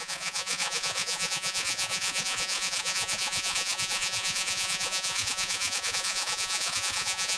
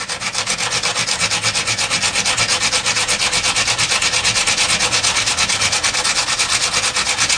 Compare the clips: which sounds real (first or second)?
second